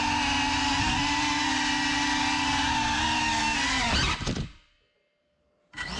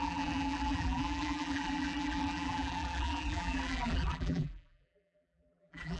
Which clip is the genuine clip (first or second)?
first